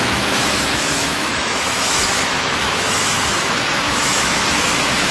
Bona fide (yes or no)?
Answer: no